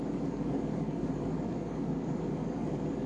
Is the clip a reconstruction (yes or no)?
yes